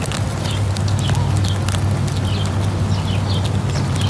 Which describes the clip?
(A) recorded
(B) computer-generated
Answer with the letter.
A